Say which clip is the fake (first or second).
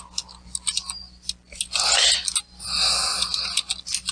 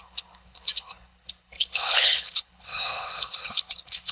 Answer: second